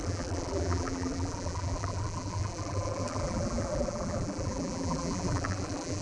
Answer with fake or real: fake